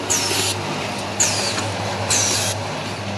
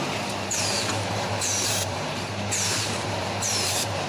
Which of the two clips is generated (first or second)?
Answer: second